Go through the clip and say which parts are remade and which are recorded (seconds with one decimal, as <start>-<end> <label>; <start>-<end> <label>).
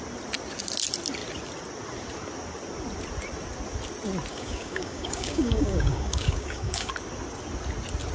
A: 0.0-4.3 recorded; 4.3-6.9 remade; 6.9-8.1 recorded